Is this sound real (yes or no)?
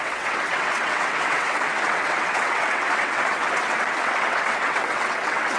no